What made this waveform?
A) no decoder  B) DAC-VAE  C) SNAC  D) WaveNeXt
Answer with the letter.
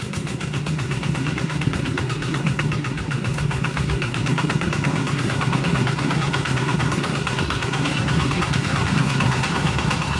C